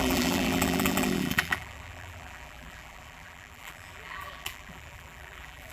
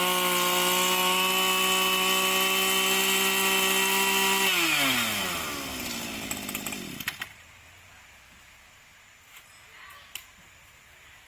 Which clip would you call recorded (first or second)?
second